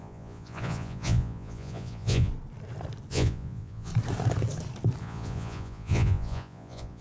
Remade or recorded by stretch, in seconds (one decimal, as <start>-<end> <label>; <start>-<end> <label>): 0.0-2.3 remade; 2.3-3.1 recorded; 3.1-3.9 remade; 3.9-5.0 recorded; 5.0-7.0 remade